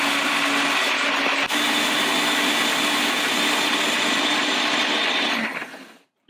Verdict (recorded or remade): recorded